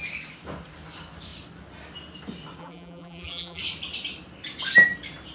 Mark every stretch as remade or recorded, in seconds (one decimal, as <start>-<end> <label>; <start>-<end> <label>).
0.0-2.6 recorded; 2.6-3.6 remade; 3.6-5.3 recorded